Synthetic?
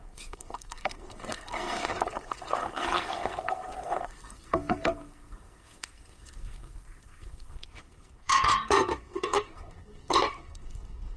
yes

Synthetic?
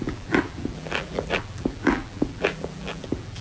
yes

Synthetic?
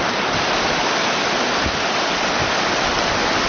no